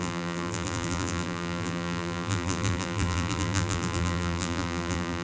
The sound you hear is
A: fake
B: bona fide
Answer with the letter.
A